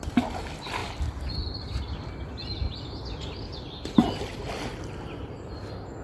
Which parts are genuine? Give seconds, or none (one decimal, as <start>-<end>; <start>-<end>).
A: 0.0-6.0